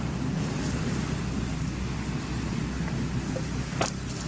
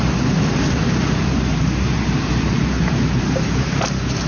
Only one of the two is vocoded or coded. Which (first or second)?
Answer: second